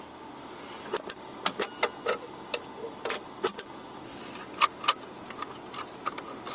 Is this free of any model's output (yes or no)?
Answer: yes